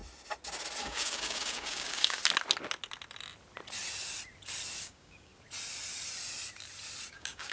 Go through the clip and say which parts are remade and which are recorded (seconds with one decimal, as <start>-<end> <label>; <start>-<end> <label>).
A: 0.0-0.8 recorded; 0.8-2.2 remade; 2.2-4.8 recorded; 4.8-5.3 remade; 5.3-7.1 recorded; 7.1-7.5 remade